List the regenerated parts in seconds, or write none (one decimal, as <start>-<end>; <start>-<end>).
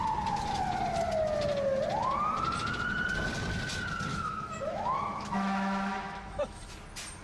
4.1-6.6